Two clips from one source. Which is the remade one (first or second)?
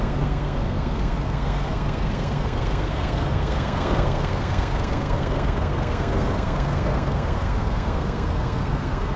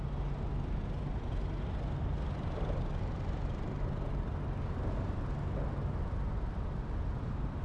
first